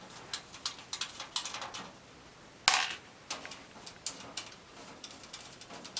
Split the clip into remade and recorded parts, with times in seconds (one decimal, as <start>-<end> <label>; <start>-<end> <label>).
0.0-6.0 recorded